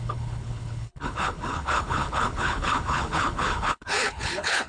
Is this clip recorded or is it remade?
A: remade